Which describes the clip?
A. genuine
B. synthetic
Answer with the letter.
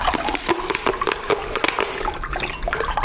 A